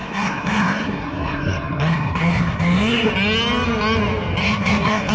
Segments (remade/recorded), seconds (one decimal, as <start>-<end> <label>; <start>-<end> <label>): 0.0-3.1 remade; 3.1-4.4 recorded; 4.4-5.1 remade